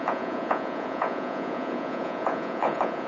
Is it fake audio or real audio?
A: fake